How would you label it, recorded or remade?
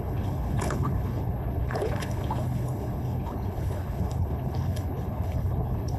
remade